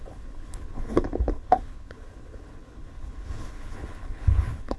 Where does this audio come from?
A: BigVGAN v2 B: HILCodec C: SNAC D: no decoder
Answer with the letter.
B